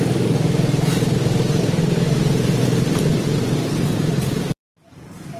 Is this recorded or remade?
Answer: remade